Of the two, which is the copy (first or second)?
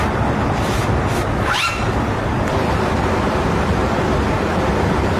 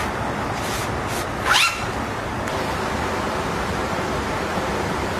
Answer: first